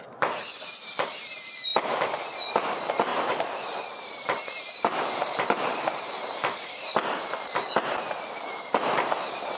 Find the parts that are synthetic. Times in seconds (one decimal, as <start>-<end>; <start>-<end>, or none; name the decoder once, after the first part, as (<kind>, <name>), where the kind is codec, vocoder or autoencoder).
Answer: 3.1-8.0 (vocoder, BigVGAN v2)